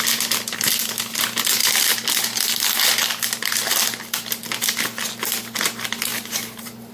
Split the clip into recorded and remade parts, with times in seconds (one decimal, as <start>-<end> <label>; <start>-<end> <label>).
0.0-6.1 recorded; 6.1-6.9 remade